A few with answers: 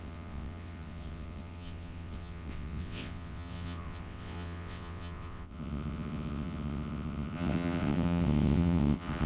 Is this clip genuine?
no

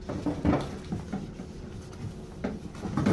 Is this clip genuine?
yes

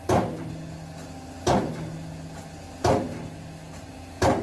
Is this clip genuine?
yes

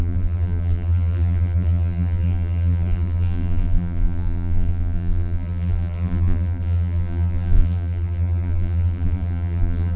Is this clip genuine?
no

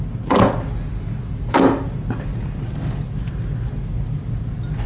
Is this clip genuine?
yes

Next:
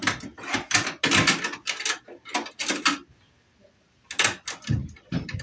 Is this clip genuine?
yes